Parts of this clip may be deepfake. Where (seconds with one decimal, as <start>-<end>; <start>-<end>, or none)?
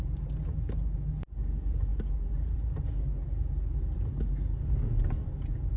none